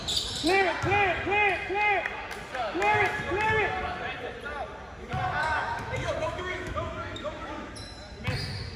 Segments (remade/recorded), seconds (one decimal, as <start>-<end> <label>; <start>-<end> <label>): 0.0-5.4 recorded; 5.4-7.7 remade; 7.7-8.8 recorded